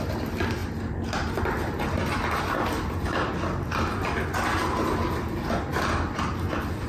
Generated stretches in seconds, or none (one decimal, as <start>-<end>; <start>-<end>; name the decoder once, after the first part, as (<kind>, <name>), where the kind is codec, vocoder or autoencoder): none